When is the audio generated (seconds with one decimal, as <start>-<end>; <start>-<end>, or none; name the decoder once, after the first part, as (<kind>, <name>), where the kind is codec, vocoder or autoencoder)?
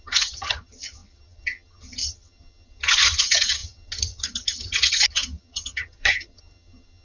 0.0-7.0 (vocoder, HiFi-GAN)